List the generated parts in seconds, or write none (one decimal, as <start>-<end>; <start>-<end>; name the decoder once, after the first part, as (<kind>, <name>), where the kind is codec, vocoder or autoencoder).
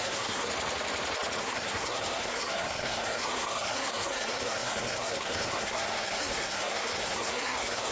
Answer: 0.0-0.5 (codec, SNAC); 1.4-7.9